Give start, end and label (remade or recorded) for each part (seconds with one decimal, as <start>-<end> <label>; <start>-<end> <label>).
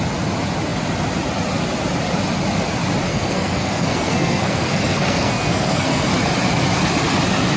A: 0.0-3.1 recorded; 3.1-6.1 remade; 6.1-7.6 recorded